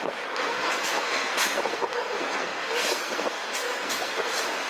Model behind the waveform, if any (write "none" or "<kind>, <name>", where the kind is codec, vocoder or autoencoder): codec, SNAC